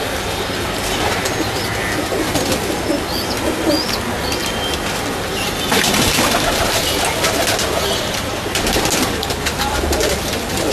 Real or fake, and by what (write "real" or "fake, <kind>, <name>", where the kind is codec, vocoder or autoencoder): real